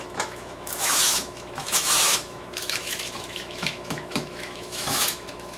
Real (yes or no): no